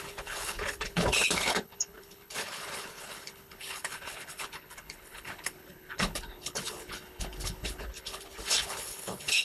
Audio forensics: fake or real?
fake